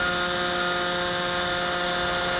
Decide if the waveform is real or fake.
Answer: real